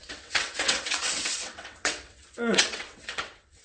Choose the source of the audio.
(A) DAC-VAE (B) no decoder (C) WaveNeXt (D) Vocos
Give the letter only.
C